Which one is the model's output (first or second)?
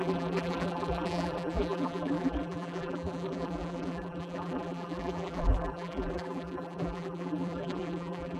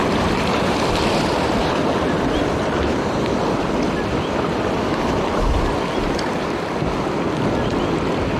first